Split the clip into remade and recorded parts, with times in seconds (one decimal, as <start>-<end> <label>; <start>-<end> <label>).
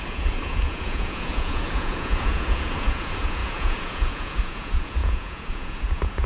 0.0-6.3 remade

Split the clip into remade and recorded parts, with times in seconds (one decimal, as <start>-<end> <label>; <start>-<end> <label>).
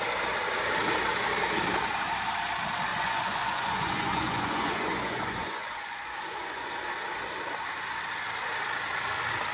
0.0-2.9 recorded; 2.9-6.7 remade; 6.7-9.5 recorded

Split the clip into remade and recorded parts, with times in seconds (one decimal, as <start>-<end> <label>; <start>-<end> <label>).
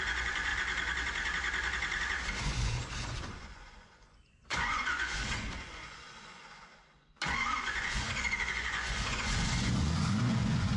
0.0-0.5 remade; 0.5-2.4 recorded; 2.4-10.8 remade